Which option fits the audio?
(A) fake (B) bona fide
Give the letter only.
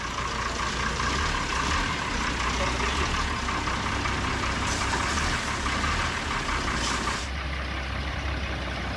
B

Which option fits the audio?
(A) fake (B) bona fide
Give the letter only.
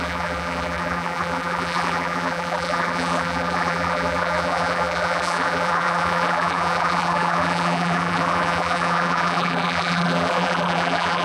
A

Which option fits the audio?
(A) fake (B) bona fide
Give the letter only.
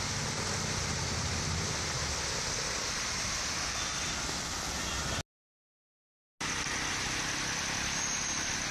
B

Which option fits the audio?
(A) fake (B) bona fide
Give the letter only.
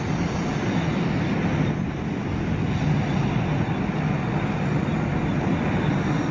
B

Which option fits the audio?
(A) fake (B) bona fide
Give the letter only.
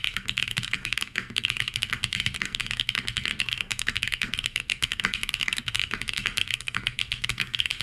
A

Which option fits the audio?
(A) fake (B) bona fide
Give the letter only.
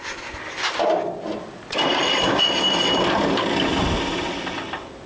B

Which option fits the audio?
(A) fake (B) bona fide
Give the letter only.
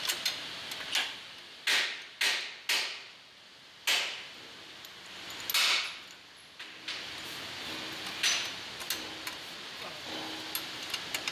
B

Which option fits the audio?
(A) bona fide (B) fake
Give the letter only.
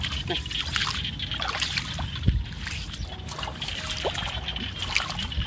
B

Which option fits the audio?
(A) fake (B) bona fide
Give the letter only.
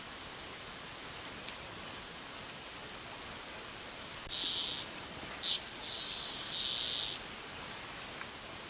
B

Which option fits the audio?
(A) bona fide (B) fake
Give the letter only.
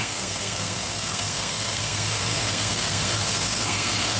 B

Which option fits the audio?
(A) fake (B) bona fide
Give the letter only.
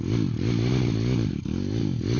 B